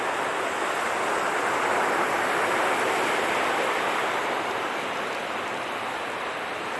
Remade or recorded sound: recorded